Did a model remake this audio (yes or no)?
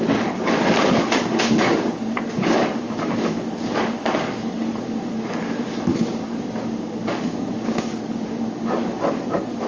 yes